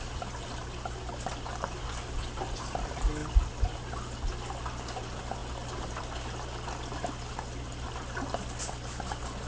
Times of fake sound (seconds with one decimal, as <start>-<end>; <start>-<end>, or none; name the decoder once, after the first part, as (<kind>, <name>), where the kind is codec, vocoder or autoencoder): none